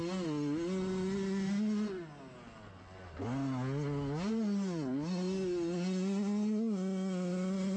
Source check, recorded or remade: recorded